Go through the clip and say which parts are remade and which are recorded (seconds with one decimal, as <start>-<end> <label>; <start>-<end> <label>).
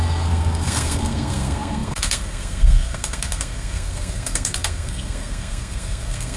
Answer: 0.0-6.4 remade